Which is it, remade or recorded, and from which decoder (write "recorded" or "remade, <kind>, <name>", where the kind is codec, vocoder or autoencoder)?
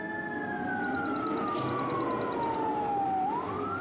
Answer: recorded